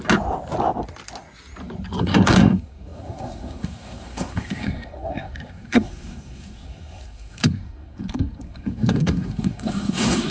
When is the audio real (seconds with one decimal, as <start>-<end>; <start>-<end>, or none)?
0.0-2.0